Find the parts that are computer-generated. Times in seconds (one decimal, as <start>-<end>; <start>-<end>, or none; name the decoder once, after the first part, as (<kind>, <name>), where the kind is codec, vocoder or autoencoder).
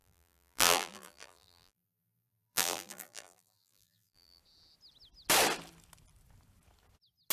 0.0-4.4 (vocoder, BigVGAN v2)